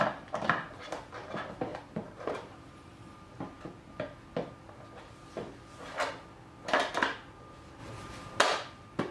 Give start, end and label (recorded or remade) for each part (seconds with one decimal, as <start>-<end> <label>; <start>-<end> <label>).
0.0-1.7 recorded; 1.7-3.4 remade; 3.4-7.8 recorded; 7.8-8.4 remade; 8.4-9.1 recorded